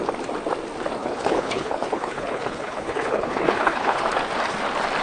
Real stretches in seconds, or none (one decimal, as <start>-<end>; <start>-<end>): 0.0-1.0; 4.0-5.0